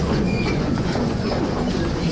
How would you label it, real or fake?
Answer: fake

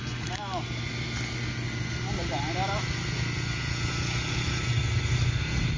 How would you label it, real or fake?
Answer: real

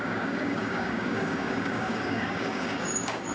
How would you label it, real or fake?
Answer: fake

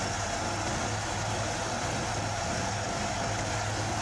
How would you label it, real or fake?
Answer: real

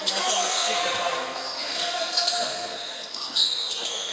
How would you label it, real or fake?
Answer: fake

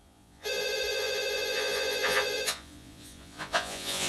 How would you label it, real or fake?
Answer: fake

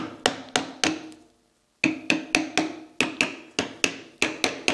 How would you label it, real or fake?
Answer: real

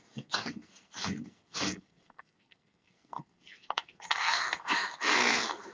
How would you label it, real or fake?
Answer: fake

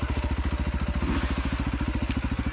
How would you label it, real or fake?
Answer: real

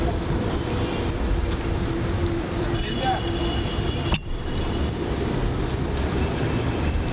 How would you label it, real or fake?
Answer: fake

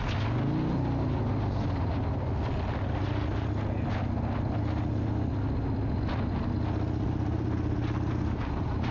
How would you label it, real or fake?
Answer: real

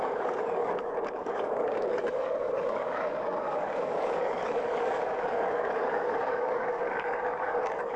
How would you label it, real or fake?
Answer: fake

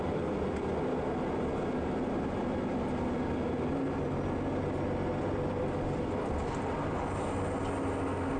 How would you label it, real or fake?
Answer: real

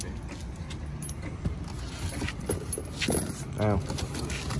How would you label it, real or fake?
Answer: real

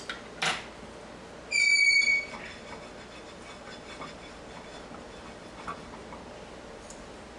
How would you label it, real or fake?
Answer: real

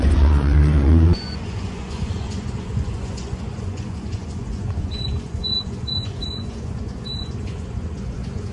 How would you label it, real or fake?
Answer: fake